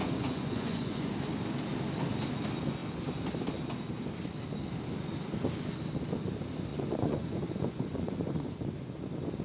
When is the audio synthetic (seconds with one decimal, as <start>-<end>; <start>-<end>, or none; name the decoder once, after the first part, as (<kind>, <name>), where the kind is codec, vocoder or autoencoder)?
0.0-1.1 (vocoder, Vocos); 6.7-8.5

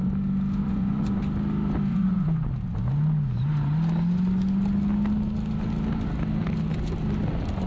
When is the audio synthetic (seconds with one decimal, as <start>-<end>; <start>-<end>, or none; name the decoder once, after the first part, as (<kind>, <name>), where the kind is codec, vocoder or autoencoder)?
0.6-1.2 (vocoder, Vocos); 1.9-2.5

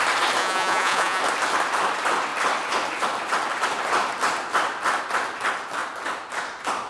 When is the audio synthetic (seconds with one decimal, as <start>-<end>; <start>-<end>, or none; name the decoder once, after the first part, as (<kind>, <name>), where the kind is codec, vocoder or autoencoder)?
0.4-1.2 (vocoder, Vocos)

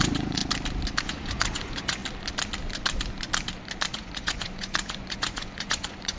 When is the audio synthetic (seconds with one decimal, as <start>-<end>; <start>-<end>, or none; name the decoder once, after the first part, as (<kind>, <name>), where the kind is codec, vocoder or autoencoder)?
0.0-0.4 (vocoder, Vocos); 1.0-2.0; 3.9-6.2

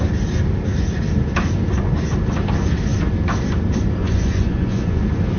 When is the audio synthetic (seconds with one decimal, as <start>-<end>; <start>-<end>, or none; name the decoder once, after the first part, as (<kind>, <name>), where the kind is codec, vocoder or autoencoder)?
4.0-5.0 (vocoder, Vocos)

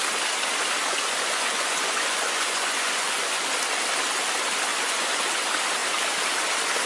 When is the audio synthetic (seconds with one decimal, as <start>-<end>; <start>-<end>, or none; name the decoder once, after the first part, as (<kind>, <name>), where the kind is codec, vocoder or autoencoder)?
0.8-3.4 (vocoder, Vocos); 4.7-5.2